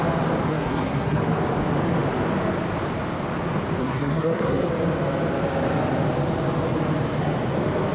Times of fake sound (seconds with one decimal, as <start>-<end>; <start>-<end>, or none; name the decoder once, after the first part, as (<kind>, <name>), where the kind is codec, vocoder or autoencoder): 0.5-1.2 (codec, SNAC); 3.8-4.7